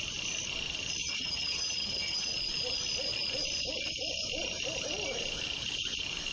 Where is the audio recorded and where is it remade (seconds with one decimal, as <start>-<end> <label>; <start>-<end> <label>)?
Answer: 0.0-1.0 recorded; 1.0-2.3 remade; 2.3-6.3 recorded